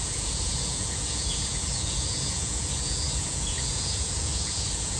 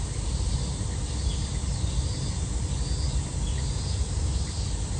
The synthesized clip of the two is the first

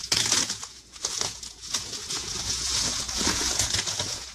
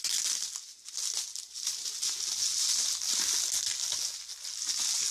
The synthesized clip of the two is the first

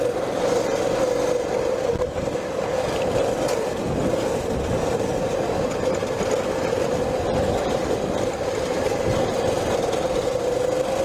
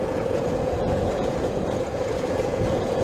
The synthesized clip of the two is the second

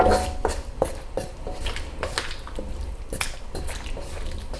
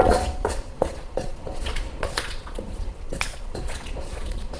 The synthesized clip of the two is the second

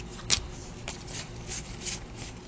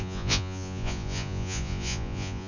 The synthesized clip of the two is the second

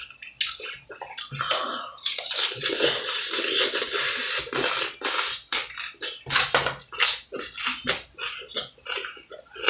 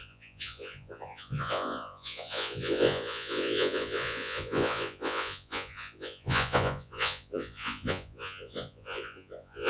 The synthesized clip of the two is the second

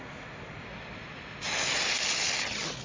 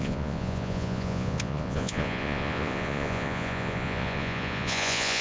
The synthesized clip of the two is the second